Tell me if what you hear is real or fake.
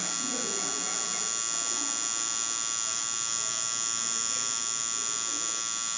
real